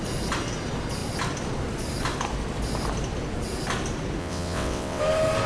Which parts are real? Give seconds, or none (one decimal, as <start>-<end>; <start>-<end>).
0.0-4.2; 5.0-5.5